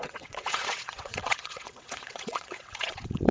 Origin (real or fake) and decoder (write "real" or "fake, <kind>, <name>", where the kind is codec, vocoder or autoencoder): fake, vocoder, WaveNeXt